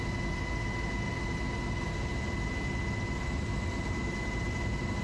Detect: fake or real real